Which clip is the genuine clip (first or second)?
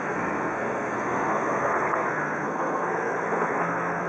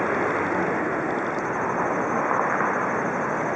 second